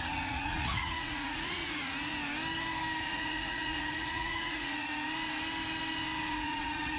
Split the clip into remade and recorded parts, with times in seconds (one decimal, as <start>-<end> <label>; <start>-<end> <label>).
0.0-2.1 remade; 2.1-3.0 recorded; 3.0-4.9 remade; 4.9-6.3 recorded; 6.3-7.0 remade